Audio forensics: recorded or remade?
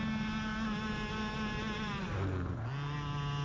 recorded